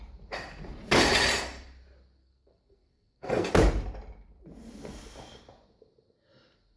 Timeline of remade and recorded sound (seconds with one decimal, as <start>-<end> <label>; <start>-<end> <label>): 0.0-2.2 recorded; 2.2-3.5 remade; 3.5-6.8 recorded